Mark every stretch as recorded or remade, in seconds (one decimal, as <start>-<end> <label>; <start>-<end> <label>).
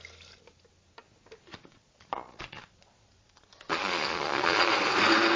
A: 0.0-1.5 recorded; 1.5-4.7 remade; 4.7-5.4 recorded